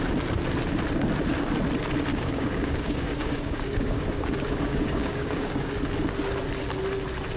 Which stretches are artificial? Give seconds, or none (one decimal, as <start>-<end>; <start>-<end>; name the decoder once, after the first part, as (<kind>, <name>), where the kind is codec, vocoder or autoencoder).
2.1-5.7 (codec, DAC)